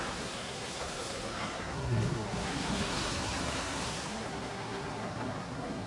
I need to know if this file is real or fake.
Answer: fake